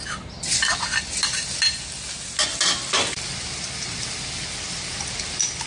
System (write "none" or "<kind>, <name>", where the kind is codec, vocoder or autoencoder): none